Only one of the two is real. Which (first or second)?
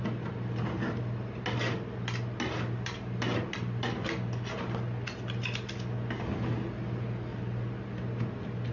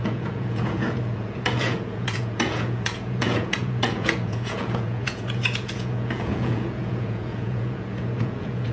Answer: first